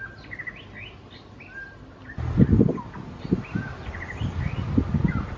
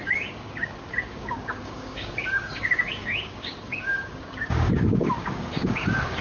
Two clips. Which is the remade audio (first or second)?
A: second